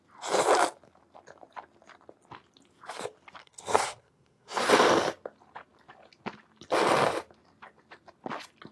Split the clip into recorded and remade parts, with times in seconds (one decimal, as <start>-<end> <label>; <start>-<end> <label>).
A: 0.0-3.4 recorded; 3.4-4.7 remade; 4.7-8.7 recorded